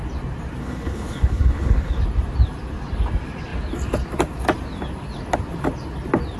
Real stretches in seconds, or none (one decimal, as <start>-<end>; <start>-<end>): 0.0-0.6; 2.0-6.4